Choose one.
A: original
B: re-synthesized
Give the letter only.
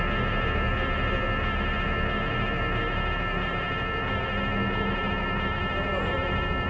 A